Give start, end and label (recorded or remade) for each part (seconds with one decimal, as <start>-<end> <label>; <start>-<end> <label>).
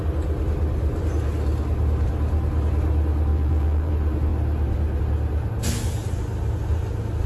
0.0-3.3 recorded; 3.3-3.9 remade; 3.9-7.3 recorded